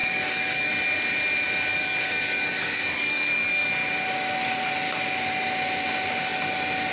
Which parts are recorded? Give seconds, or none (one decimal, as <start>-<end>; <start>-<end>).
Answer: 0.7-1.7; 3.7-6.9